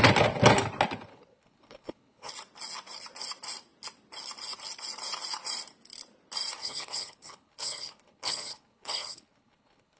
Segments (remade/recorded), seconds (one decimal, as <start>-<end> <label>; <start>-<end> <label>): 0.0-1.1 recorded; 1.1-2.3 remade; 2.3-6.6 recorded; 6.6-10.0 remade